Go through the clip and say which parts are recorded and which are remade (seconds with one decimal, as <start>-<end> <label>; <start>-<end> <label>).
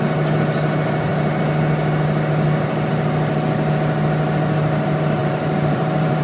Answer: 0.0-5.2 recorded; 5.2-6.2 remade